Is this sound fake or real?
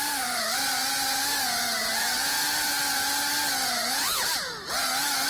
real